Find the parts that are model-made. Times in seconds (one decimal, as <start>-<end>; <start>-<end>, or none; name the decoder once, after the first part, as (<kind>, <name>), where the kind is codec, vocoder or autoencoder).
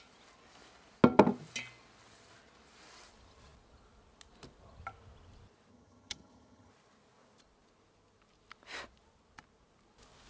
5.7-6.7 (vocoder, HiFi-GAN)